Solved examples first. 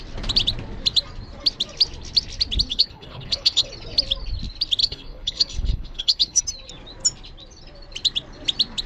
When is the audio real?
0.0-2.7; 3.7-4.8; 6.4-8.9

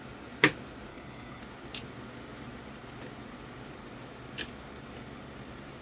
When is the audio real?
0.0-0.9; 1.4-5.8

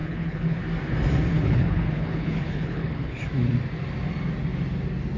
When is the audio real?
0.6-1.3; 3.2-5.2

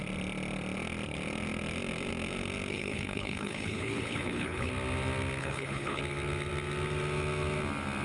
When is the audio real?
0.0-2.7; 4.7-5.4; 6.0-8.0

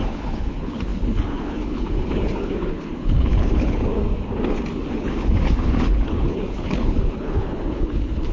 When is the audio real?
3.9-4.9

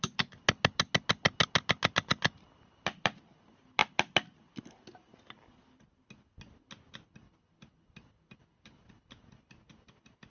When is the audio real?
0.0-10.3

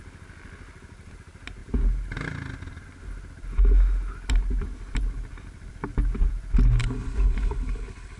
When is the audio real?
0.0-6.8